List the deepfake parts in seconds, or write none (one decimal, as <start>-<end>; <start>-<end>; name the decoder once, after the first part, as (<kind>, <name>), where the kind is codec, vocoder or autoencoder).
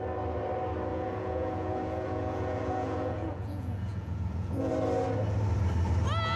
0.9-4.7 (vocoder, Vocos)